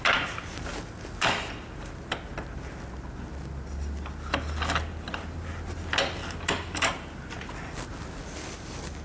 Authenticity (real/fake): real